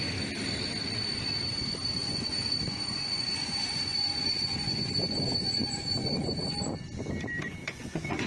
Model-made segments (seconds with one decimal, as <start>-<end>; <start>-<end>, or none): 2.0-6.8; 7.6-8.3